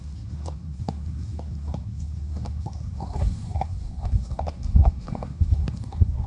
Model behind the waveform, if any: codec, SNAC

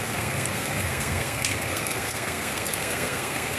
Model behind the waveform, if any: codec, SNAC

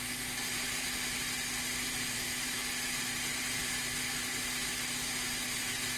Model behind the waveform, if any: none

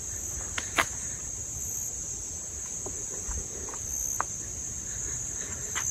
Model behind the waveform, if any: none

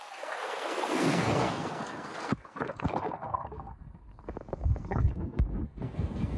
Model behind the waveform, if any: codec, SNAC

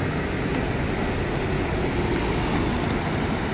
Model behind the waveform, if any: none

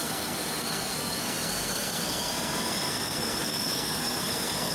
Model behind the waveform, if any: codec, SNAC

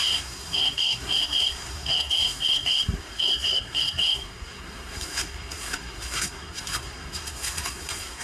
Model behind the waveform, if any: codec, SNAC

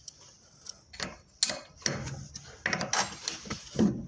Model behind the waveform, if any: none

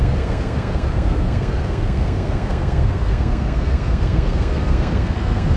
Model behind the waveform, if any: codec, SNAC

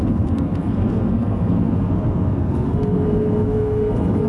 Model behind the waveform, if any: codec, SNAC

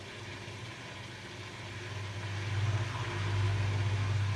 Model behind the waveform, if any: none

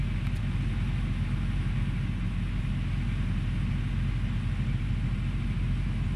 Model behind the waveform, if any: none